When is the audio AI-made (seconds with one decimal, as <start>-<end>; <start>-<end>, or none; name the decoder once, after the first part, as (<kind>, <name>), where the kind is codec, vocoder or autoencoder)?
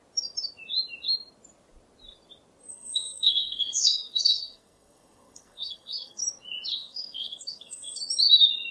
2.7-6.2 (codec, SNAC); 6.7-8.0